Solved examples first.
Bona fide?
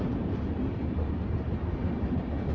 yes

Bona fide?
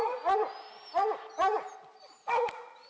yes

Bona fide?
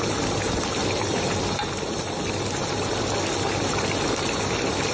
yes